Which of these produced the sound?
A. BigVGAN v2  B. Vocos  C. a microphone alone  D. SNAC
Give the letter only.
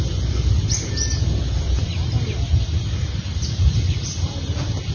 A